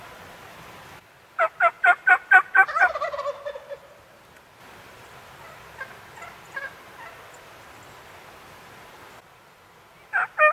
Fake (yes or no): no